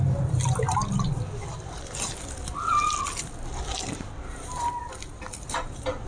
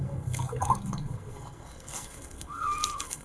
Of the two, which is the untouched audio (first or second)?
first